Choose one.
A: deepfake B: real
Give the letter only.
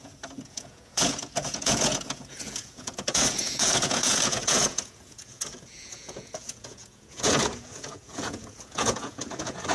A